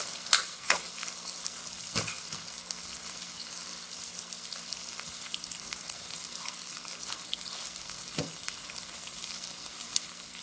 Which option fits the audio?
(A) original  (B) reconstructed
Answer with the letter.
B